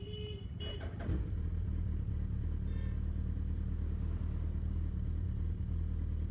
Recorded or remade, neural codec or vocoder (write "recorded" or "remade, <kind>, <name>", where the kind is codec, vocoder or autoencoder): recorded